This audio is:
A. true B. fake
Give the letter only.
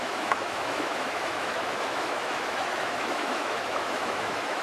B